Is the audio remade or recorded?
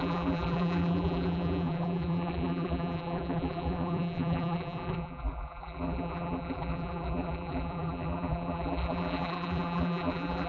remade